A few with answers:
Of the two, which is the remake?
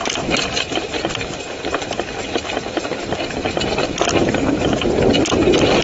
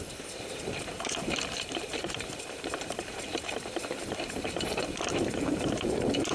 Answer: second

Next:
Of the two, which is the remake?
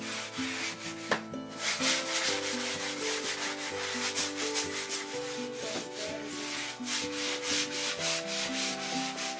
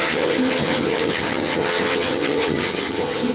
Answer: second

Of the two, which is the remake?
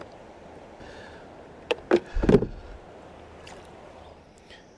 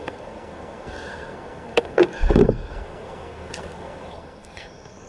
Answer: second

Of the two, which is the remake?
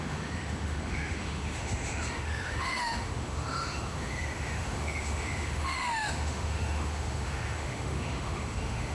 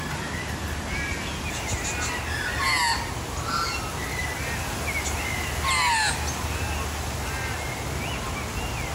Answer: first